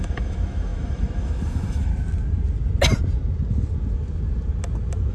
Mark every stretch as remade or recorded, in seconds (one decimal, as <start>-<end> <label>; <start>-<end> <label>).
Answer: 0.0-1.9 remade; 1.9-5.1 recorded